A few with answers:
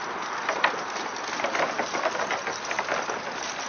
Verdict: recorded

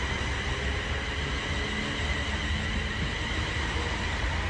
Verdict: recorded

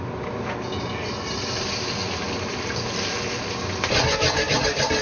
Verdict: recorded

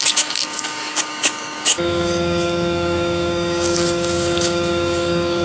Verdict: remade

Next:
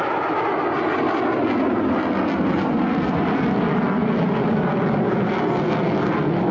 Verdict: recorded